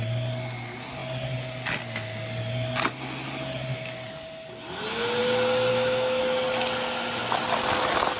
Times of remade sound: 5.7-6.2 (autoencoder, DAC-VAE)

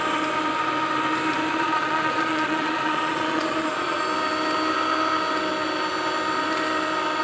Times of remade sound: 1.5-4.0 (vocoder, Vocos)